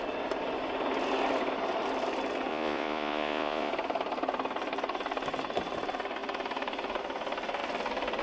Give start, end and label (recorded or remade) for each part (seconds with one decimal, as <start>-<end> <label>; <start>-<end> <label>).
0.0-2.5 recorded; 2.5-3.7 remade; 3.7-8.2 recorded